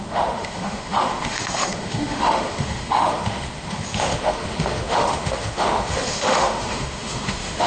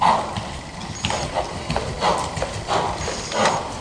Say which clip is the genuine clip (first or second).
second